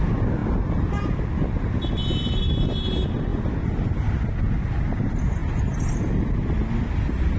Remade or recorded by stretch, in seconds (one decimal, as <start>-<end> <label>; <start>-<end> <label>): 0.0-7.4 recorded